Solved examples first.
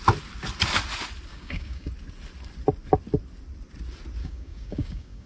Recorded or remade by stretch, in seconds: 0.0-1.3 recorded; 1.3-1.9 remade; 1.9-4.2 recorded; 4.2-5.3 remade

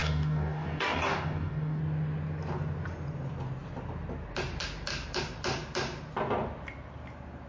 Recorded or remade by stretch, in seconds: 0.0-1.8 remade; 1.8-7.5 recorded